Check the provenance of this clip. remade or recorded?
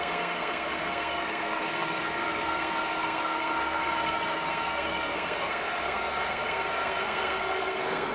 remade